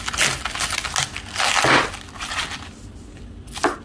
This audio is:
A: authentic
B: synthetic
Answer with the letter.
A